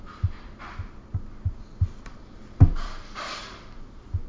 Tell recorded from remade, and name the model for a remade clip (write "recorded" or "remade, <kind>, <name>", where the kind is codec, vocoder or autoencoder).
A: remade, vocoder, BigVGAN v2